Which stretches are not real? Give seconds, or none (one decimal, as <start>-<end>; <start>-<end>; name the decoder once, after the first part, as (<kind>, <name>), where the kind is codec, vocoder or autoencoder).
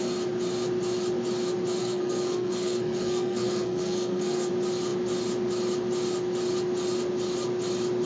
1.8-4.5 (codec, SNAC)